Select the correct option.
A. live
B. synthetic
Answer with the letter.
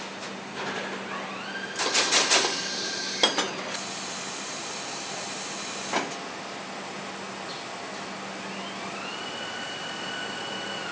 A